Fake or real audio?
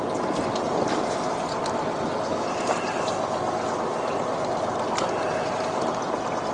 real